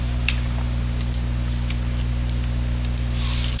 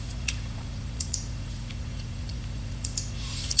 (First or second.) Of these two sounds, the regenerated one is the second